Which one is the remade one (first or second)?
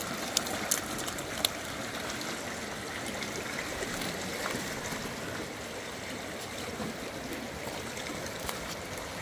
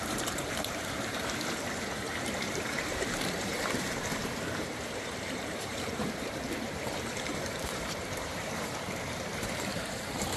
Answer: second